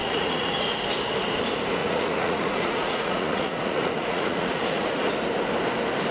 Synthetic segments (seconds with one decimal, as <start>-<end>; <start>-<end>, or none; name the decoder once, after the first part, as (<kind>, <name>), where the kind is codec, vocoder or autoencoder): 0.0-0.5 (vocoder, Vocos); 1.8-5.1